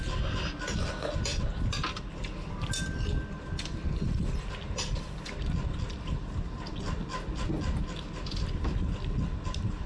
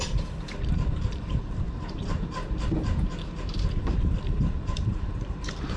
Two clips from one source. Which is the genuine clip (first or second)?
first